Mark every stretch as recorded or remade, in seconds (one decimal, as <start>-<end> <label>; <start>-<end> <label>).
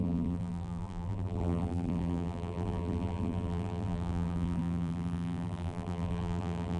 0.0-6.8 remade